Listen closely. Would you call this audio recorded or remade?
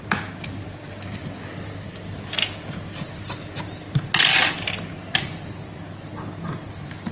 recorded